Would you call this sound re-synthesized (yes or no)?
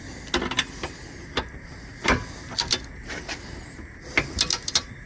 no